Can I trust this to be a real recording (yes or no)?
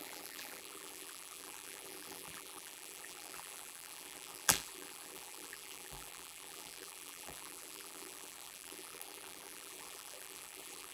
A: no